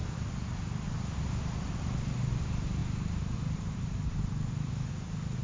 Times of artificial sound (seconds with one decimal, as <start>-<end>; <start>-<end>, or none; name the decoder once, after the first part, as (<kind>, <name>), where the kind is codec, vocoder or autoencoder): none